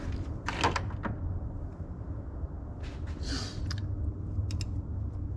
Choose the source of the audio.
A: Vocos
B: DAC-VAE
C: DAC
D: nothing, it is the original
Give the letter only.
D